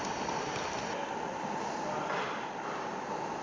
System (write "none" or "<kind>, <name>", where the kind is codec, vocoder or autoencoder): none